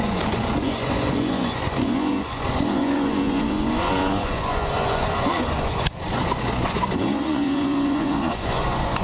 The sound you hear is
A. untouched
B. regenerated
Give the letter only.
B